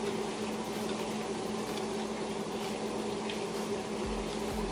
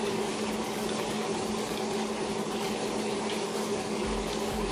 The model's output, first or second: second